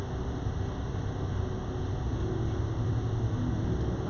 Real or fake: real